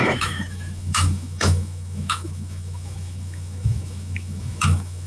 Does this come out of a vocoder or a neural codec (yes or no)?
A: yes